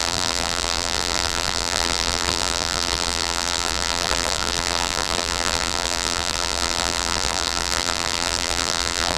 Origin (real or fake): fake